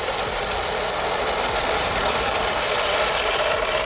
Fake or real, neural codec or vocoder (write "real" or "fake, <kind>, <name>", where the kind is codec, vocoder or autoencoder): real